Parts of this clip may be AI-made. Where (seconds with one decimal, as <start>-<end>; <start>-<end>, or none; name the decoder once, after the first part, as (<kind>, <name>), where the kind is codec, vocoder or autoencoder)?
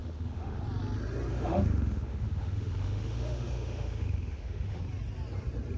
0.0-0.6 (autoencoder, DAC-VAE); 1.3-4.8